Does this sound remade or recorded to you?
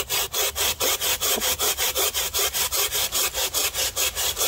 remade